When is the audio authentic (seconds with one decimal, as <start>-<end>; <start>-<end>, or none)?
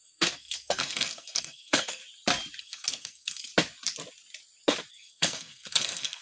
2.0-2.6; 3.5-4.9